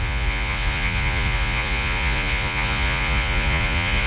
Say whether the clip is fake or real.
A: fake